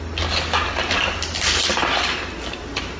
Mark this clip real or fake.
real